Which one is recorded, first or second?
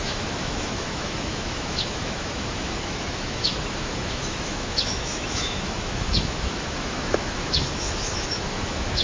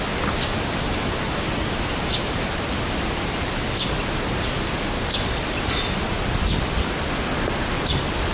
second